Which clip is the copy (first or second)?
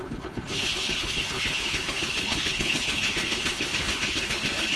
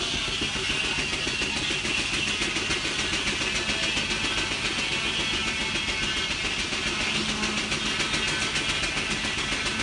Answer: first